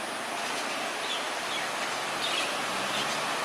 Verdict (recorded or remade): recorded